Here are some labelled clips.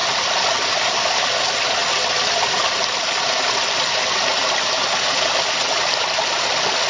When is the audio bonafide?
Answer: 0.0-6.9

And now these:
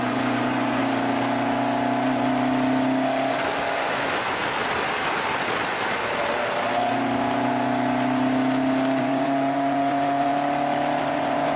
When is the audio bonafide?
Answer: 0.8-3.3; 4.4-9.0; 10.3-11.0

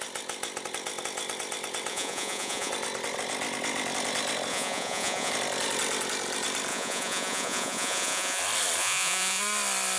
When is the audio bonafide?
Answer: 0.0-1.9; 2.7-4.5; 5.3-6.7; 8.4-8.8; 9.4-10.0

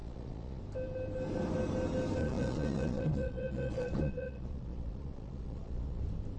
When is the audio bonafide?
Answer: 0.6-2.2; 6.0-6.4

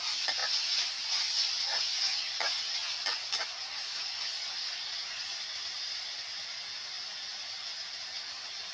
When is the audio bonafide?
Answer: 0.0-8.7

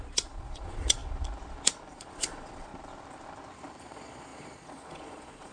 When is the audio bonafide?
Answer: 1.0-1.9; 2.7-3.8

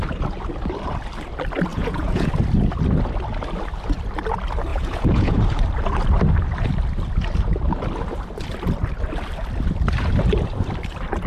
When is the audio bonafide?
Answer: 0.0-1.7; 2.3-4.7; 5.4-11.3